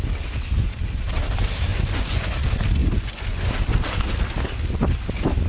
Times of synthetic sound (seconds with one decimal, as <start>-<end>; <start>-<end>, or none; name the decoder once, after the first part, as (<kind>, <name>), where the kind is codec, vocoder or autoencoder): 1.7-2.4 (vocoder, Vocos); 2.8-3.5